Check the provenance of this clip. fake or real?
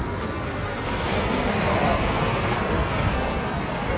fake